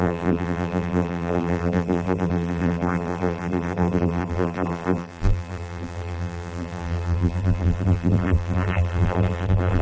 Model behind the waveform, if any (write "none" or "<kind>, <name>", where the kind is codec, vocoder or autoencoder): vocoder, BigVGAN v2